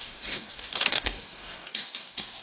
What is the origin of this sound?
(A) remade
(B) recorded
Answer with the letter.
A